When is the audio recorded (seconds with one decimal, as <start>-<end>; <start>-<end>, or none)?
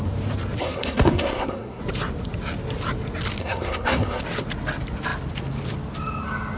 0.0-0.6; 1.8-3.4; 4.2-6.6